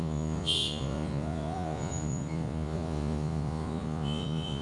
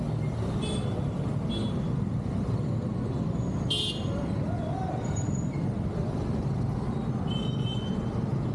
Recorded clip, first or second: second